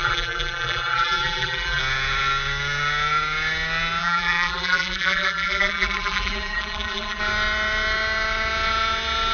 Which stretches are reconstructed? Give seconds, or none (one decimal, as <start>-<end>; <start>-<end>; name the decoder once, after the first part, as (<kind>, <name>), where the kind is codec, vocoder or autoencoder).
0.0-1.8 (vocoder, BigVGAN v2); 4.0-7.2